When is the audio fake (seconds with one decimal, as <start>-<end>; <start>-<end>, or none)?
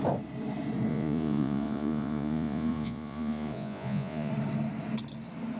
0.9-4.3